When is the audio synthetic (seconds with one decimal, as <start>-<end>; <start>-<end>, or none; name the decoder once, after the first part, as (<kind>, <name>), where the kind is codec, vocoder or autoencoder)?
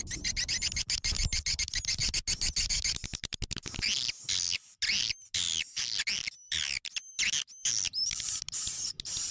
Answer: none